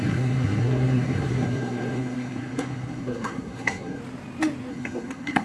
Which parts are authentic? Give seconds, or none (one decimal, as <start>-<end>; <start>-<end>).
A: 4.0-4.7